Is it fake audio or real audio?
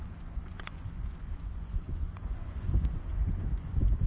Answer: fake